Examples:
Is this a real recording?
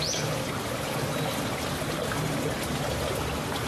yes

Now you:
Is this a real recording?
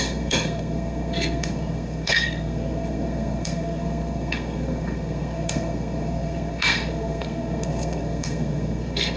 no